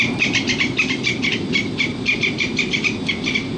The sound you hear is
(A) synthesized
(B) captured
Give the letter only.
B